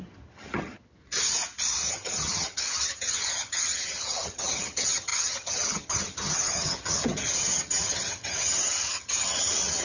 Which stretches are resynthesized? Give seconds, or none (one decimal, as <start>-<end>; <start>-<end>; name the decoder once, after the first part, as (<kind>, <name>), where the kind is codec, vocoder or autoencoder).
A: 0.0-1.0 (vocoder, HiFi-GAN); 1.9-9.8